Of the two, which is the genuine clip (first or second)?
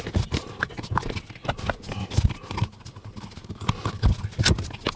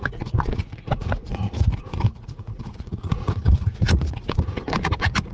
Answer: first